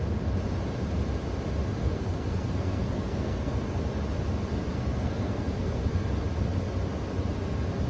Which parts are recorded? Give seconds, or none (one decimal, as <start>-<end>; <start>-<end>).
0.0-1.8; 3.8-4.7; 6.1-7.9